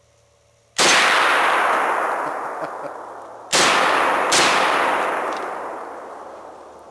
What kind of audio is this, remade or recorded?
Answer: recorded